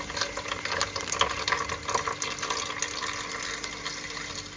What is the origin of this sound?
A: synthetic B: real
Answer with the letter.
B